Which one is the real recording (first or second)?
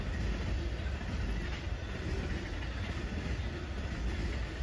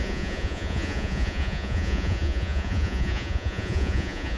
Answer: first